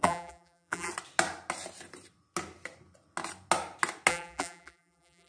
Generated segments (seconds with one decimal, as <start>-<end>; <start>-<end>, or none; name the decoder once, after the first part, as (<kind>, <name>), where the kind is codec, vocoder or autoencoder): 0.0-0.9 (vocoder, BigVGAN v2); 4.1-5.3